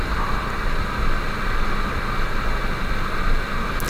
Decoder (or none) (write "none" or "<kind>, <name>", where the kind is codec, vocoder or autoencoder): none